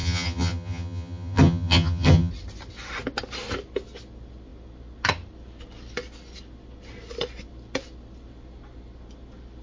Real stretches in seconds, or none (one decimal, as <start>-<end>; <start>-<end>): 2.3-9.6